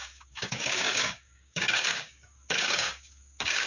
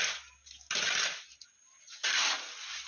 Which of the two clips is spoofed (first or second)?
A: first